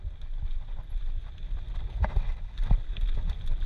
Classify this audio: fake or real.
real